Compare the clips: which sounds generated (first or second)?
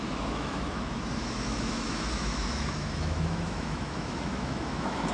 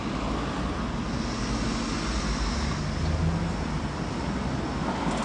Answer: first